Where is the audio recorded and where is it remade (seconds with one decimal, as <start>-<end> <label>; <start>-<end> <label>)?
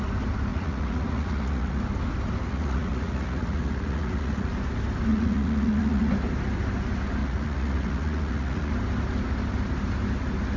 0.0-0.5 recorded; 0.5-1.8 remade; 1.8-2.4 recorded; 2.4-4.5 remade; 4.5-5.1 recorded; 5.1-6.1 remade; 6.1-7.2 recorded; 7.2-8.7 remade; 8.7-10.6 recorded